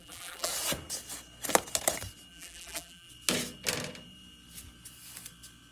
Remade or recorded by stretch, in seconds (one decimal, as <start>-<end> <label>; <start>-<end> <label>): 0.0-0.5 remade; 0.5-2.3 recorded; 2.3-3.1 remade; 3.1-5.7 recorded